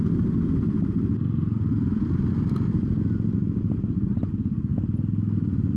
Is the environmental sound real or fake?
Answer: real